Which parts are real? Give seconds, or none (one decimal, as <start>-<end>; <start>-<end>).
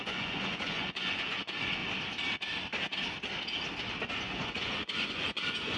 1.8-4.1